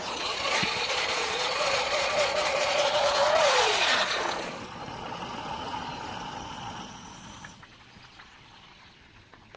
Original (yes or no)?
no